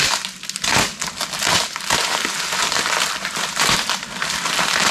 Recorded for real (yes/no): yes